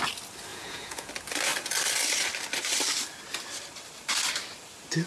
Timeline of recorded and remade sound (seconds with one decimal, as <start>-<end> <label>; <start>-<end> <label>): 0.0-0.5 recorded; 0.5-1.1 remade; 1.1-5.1 recorded

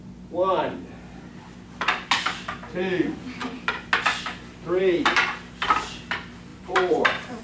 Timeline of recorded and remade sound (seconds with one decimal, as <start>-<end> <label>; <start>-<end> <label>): 0.0-0.7 remade; 0.7-6.5 recorded; 6.5-7.4 remade

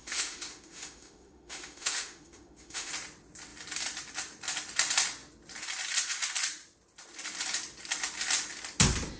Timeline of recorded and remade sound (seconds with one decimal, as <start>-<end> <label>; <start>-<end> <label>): 0.0-2.9 remade; 2.9-9.2 recorded

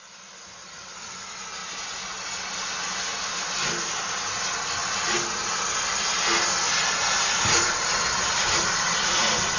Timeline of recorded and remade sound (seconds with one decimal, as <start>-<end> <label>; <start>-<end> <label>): 0.0-0.6 recorded; 0.6-1.2 remade; 1.2-4.8 recorded; 4.8-9.6 remade

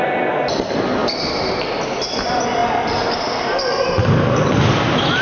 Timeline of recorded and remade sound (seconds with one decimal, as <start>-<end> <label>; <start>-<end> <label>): 0.0-5.2 recorded